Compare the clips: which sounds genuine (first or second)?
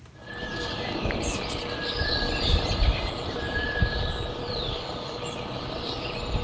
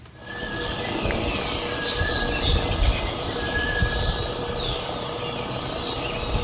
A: second